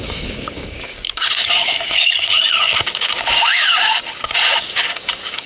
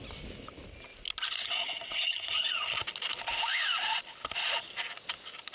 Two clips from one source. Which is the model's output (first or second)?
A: first